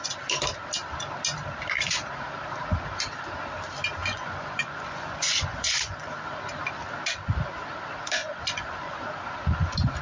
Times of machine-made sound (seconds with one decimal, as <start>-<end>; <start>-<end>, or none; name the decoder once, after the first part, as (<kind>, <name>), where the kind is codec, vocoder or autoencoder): 4.0-6.1 (vocoder, Vocos); 8.2-9.0